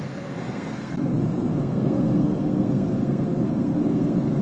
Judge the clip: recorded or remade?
remade